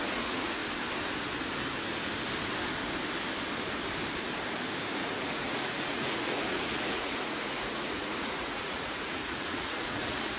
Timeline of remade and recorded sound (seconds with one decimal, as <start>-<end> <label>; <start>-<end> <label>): 0.0-0.6 remade; 0.6-5.2 recorded; 5.2-10.4 remade